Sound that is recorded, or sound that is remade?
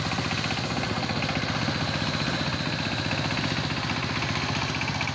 recorded